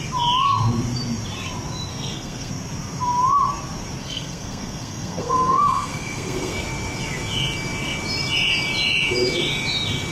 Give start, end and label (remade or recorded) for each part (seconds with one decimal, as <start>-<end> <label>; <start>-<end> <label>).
0.0-1.9 recorded; 1.9-2.5 remade; 2.5-4.0 recorded; 4.0-6.6 remade; 6.6-10.1 recorded